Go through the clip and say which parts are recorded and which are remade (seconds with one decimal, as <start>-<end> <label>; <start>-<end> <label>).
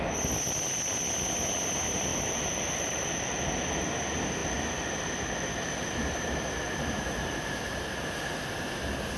0.0-2.1 recorded; 2.1-3.4 remade; 3.4-4.4 recorded; 4.4-7.8 remade; 7.8-9.2 recorded